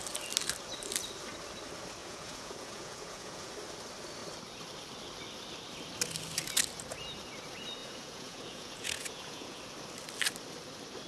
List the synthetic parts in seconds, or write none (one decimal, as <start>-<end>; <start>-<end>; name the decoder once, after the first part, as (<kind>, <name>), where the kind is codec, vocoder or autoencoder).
2.0-3.5 (vocoder, Vocos); 7.8-9.6